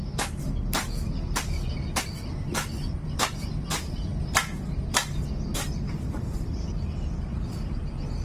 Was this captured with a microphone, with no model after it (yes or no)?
yes